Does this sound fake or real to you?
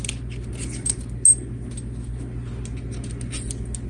real